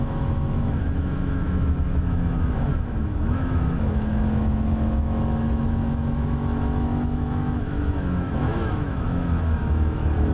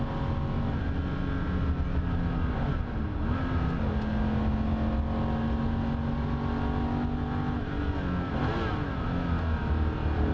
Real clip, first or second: second